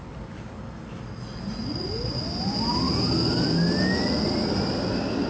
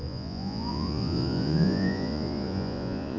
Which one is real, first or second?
first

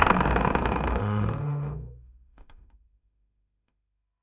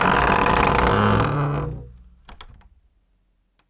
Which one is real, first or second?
second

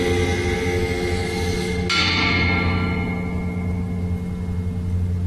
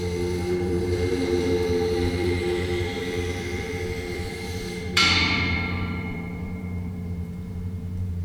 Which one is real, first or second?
first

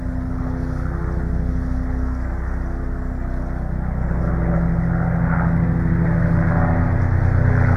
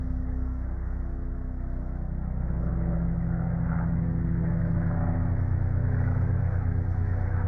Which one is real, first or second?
first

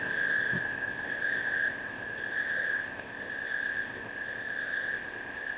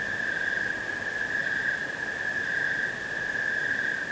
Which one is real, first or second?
second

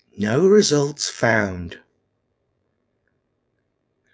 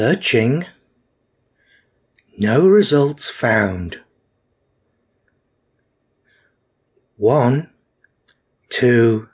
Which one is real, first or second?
second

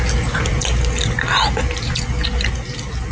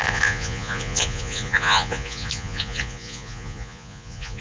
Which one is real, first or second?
first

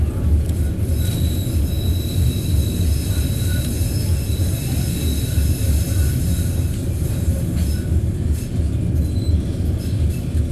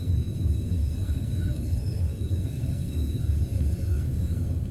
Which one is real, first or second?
first